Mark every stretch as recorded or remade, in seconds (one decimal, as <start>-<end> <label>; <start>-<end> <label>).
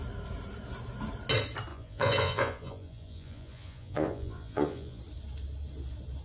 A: 0.0-1.7 recorded; 1.7-5.0 remade; 5.0-6.2 recorded